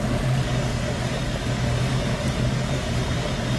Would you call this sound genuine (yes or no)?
no